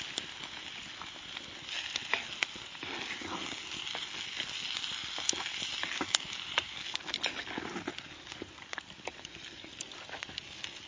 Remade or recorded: recorded